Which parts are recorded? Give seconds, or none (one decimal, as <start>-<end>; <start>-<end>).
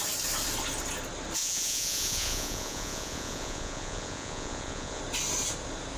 0.0-1.4; 5.0-6.0